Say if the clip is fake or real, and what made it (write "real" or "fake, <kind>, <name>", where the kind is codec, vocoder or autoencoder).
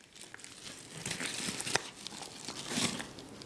real